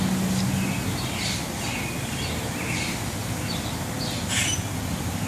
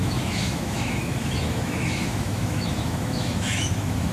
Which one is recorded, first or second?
first